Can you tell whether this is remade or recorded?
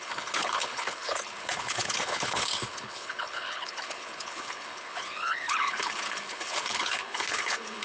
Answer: remade